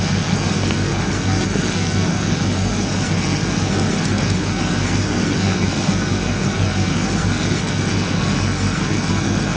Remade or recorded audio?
remade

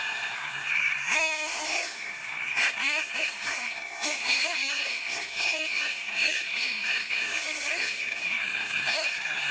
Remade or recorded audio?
remade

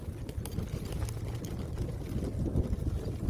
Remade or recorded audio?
recorded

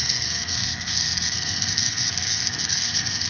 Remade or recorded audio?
remade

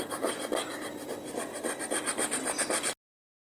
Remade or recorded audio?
recorded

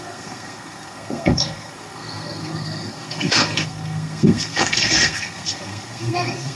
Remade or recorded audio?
remade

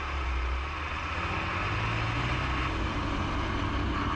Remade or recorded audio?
recorded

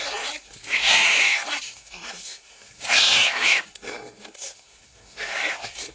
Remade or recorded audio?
remade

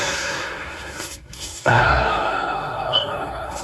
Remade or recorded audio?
remade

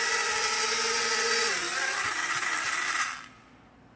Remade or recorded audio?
recorded